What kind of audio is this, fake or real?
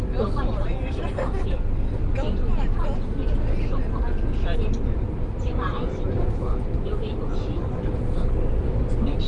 real